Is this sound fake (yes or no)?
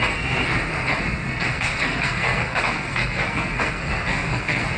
yes